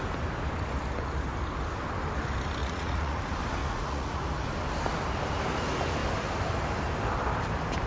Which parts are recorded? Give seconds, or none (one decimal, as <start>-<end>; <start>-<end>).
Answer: 0.0-2.6; 3.2-3.6; 4.3-7.9